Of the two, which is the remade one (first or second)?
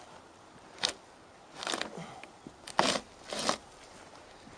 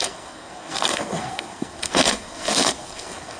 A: second